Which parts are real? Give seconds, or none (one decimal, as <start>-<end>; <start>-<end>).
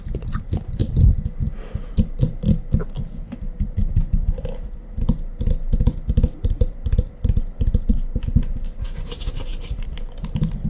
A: 0.0-0.8; 1.5-9.5